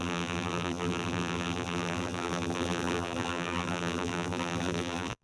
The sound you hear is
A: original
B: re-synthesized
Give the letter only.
B